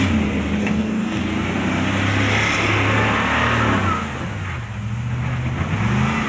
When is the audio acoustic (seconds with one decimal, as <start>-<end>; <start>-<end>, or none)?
0.0-0.6; 1.2-6.3